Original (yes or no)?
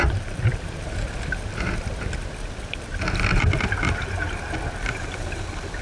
yes